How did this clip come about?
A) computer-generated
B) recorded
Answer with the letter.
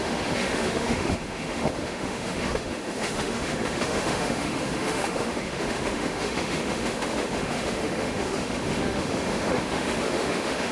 A